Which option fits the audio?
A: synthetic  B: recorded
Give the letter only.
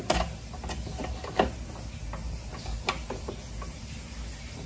B